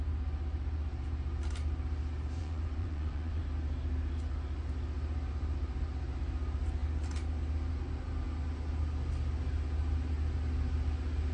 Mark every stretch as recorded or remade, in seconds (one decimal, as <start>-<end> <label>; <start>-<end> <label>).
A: 0.0-2.4 recorded; 2.4-3.4 remade; 3.4-11.3 recorded